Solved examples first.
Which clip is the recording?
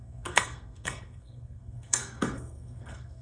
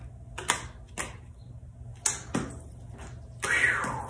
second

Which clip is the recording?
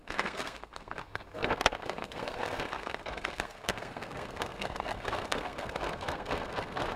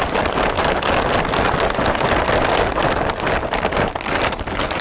second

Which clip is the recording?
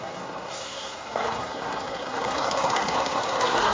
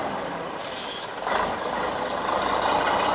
second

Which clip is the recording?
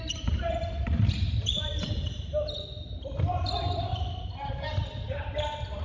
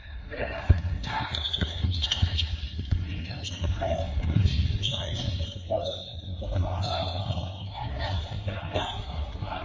first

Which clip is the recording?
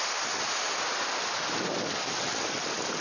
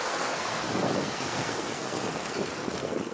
first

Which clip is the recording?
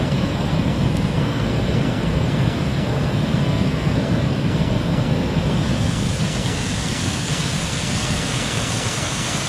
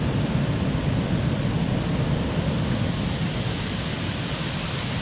second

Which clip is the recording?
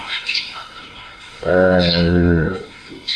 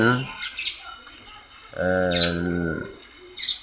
second